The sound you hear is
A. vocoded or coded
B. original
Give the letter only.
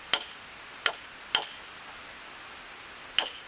B